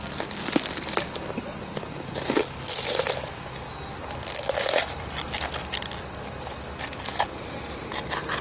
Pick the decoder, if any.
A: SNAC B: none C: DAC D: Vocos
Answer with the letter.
B